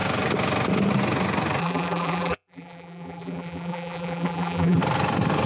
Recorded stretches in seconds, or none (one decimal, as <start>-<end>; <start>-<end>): 0.0-1.6; 4.8-5.5